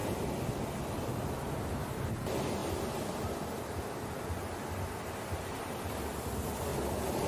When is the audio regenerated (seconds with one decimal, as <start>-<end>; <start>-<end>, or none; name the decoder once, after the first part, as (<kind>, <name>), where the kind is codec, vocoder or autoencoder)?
none